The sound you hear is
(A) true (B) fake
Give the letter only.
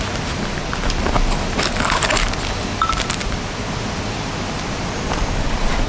A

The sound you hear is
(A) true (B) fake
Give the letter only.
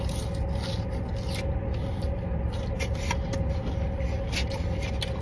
A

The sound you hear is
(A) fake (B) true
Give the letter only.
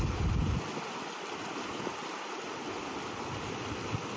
B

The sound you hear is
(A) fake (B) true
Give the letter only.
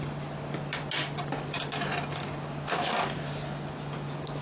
B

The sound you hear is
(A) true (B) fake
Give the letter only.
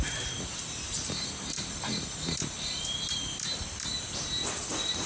B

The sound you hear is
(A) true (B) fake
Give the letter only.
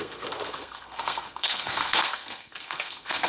B